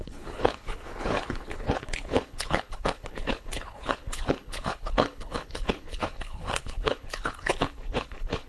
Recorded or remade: remade